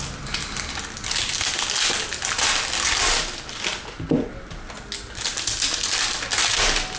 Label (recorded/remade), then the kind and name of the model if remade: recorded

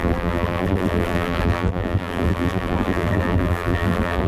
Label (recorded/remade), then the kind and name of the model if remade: remade, vocoder, BigVGAN v2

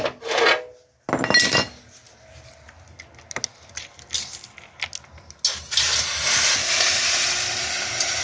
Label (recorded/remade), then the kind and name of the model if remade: recorded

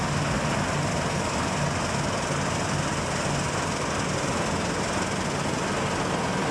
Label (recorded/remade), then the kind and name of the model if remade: recorded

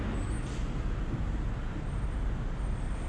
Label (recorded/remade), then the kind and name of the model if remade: recorded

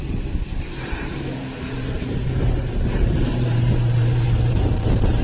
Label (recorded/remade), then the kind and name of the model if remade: remade, vocoder, BigVGAN v2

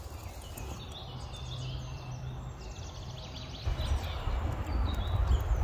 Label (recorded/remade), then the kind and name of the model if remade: recorded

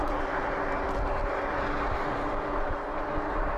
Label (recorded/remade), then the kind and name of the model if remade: recorded